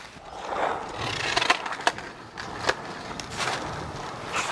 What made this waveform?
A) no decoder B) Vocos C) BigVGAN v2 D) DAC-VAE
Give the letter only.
A